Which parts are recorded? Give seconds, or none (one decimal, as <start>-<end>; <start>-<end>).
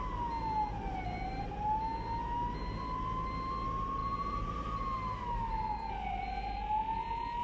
0.0-7.4